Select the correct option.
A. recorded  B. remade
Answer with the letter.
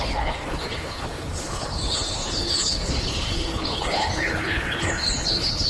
B